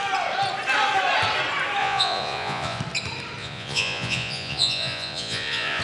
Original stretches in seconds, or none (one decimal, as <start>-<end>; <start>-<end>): 0.0-1.8; 2.8-3.4